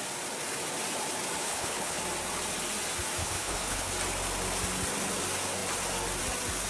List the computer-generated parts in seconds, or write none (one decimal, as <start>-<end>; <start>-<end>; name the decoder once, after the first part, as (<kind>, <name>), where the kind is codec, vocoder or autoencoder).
1.4-2.0 (codec, HILCodec); 3.2-3.9